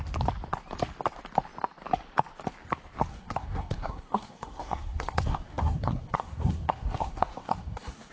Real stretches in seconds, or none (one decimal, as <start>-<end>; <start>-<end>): 0.0-3.1